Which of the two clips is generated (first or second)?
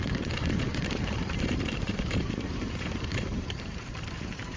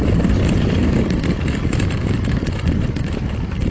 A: first